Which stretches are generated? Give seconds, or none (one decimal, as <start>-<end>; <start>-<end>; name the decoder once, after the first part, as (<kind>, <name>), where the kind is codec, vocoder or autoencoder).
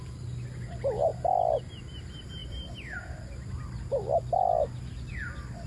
none